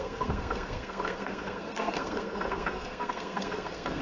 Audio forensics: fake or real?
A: fake